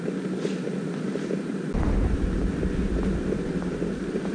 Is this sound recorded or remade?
remade